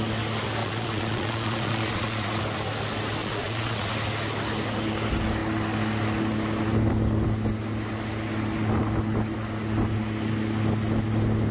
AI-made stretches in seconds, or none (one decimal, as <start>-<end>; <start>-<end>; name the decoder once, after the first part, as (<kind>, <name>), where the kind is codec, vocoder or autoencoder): 0.6-2.4 (vocoder, Vocos); 3.2-3.9